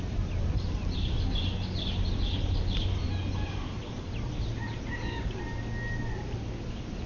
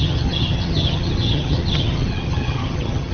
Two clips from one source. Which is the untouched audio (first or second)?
first